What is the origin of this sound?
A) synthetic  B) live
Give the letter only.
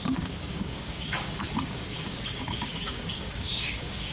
A